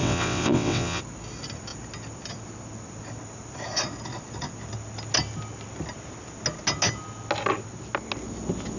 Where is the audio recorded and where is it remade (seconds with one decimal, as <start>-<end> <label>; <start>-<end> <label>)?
0.0-1.0 remade; 1.0-8.8 recorded